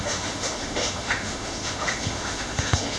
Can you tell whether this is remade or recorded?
remade